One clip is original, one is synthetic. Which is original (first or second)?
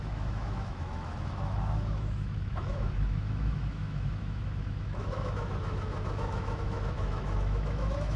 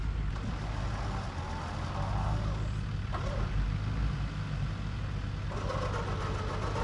second